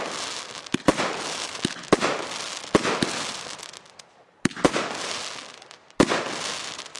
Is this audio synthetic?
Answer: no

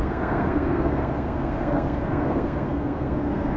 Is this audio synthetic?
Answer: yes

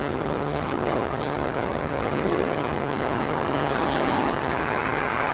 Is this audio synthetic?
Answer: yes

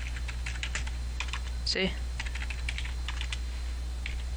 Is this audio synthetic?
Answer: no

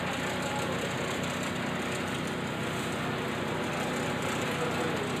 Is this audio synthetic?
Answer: no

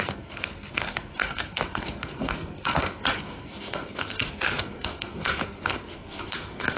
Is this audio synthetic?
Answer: yes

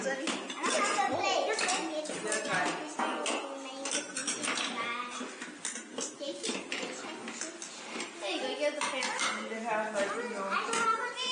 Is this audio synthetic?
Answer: no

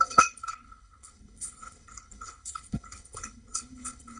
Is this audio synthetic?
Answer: yes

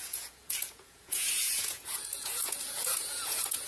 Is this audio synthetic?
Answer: yes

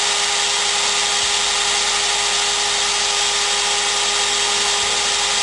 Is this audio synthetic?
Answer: no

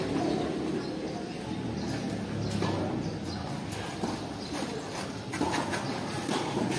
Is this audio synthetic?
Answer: no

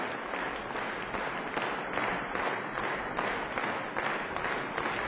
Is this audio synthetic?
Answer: no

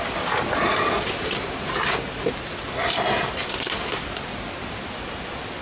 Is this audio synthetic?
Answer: no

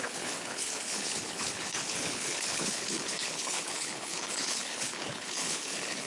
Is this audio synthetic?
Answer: yes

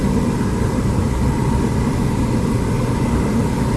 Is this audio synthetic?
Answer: no